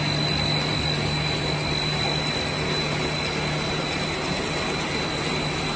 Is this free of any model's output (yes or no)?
yes